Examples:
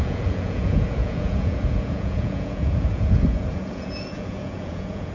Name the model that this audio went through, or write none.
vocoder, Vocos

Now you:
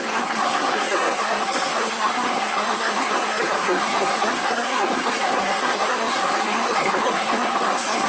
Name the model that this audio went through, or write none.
codec, SNAC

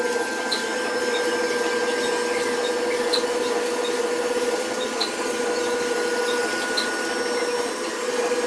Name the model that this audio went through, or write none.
none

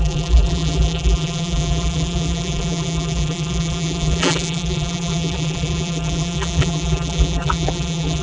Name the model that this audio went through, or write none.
vocoder, BigVGAN v2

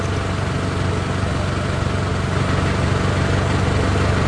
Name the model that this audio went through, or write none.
none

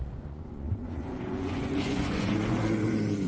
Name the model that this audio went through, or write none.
vocoder, Vocos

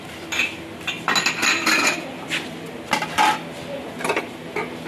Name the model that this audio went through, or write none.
none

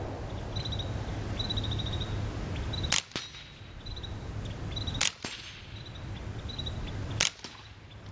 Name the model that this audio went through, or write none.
none